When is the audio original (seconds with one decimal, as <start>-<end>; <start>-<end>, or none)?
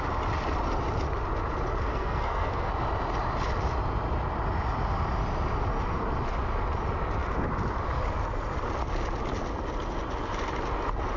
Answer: 0.0-1.9; 2.7-11.2